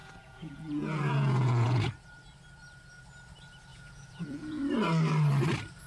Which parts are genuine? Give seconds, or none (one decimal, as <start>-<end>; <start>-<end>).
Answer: 1.9-3.7; 4.6-5.9